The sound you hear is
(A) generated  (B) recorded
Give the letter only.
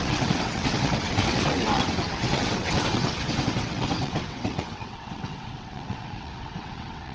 A